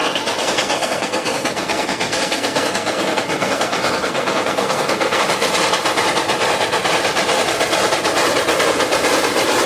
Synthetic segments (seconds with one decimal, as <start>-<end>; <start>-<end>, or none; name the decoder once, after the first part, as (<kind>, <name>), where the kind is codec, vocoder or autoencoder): 0.0-5.2 (codec, SNAC)